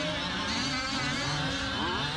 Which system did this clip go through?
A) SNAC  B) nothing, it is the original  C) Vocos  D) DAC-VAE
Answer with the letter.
B